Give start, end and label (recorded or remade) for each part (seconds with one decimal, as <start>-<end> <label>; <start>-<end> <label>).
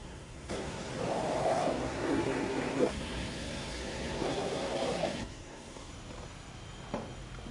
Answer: 0.0-0.9 remade; 0.9-1.4 recorded; 1.4-5.9 remade; 5.9-7.5 recorded